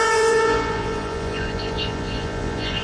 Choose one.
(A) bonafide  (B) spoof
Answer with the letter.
B